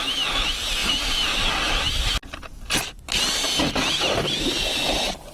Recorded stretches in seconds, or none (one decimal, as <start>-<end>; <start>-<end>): 0.0-5.3